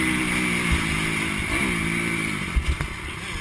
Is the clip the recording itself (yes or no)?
yes